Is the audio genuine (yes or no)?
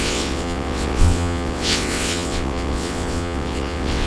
no